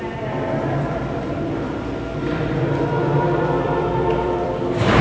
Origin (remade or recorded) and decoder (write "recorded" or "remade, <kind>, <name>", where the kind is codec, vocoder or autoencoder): remade, vocoder, BigVGAN v2